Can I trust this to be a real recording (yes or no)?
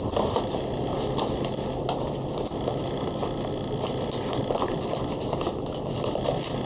no